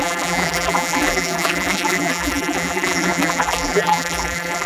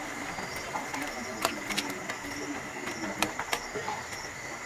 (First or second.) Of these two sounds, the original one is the second